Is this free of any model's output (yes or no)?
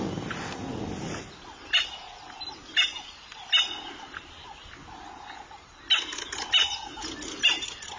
yes